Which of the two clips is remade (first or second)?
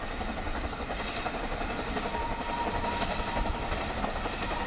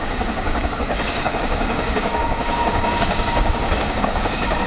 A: second